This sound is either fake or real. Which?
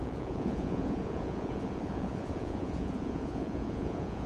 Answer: fake